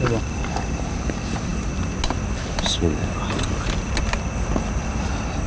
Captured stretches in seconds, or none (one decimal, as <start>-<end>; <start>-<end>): 0.0-5.5